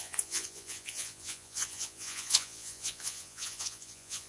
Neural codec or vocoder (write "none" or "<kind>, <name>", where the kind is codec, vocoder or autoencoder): vocoder, Vocos